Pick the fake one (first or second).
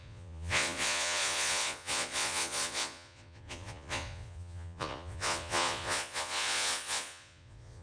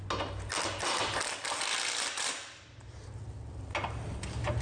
first